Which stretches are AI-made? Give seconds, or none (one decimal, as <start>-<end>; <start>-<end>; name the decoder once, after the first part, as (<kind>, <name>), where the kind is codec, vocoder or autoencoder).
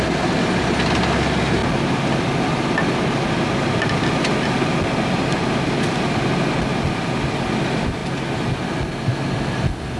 none